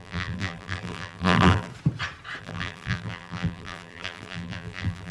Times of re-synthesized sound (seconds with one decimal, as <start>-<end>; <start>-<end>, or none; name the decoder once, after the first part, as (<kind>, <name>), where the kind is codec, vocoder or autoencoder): 0.0-1.7 (vocoder, BigVGAN v2); 2.4-5.1